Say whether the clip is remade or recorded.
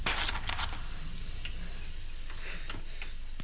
recorded